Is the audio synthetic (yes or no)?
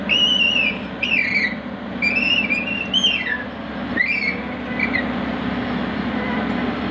no